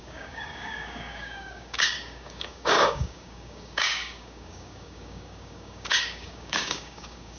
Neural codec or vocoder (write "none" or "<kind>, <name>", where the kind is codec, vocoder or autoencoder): codec, DAC